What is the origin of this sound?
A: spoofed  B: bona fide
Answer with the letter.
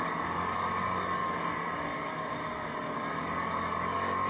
A